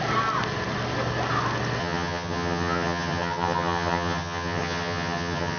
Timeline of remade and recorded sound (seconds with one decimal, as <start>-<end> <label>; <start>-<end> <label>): 0.0-1.8 recorded; 1.8-5.6 remade

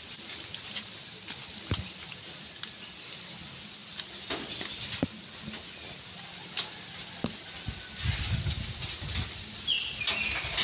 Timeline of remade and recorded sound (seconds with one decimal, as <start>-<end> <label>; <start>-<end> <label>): 0.0-10.6 recorded

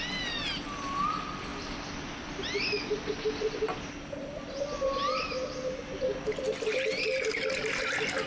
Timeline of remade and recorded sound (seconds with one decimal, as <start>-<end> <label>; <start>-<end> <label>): 0.0-8.3 recorded

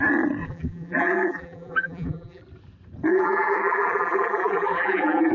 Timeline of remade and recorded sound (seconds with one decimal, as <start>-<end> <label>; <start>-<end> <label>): 0.0-0.4 recorded; 0.4-2.4 remade; 2.4-3.1 recorded; 3.1-5.3 remade

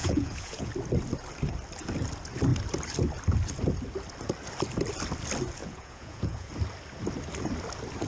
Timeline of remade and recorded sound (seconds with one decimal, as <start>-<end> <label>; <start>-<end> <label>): 0.0-0.7 remade; 0.7-5.6 recorded; 5.6-6.5 remade; 6.5-8.1 recorded

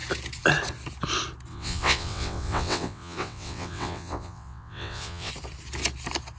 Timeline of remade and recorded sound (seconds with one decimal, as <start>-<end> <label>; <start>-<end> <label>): 0.0-1.5 recorded; 1.5-5.3 remade; 5.3-6.4 recorded